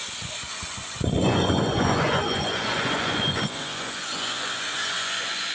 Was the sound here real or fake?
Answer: fake